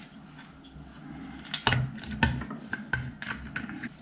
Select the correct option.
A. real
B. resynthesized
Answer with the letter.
A